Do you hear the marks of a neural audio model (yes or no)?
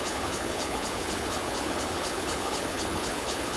yes